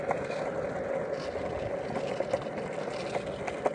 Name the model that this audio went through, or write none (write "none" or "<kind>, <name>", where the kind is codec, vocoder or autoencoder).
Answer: none